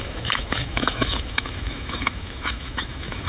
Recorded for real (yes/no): no